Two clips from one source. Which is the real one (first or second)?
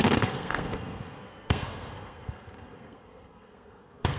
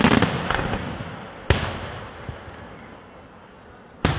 second